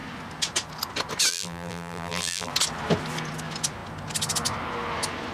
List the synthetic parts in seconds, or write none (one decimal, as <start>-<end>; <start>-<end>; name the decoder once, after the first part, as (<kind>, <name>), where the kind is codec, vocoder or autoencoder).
1.3-2.5 (vocoder, BigVGAN v2)